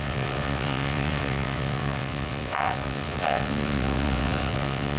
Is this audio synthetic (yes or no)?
yes